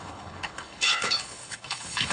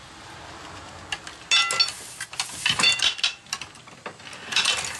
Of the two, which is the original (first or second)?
second